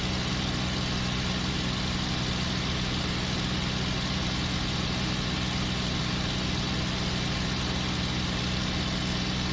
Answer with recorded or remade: recorded